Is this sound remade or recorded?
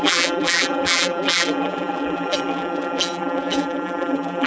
remade